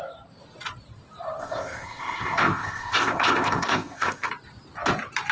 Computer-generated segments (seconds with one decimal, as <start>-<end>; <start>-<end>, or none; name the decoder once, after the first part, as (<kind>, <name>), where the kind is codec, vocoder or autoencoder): 1.4-4.3 (codec, ZipCodec)